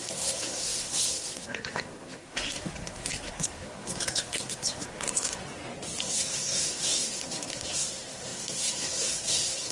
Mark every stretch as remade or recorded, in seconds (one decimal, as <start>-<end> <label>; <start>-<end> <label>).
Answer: 0.0-5.4 remade; 5.4-6.0 recorded; 6.0-9.7 remade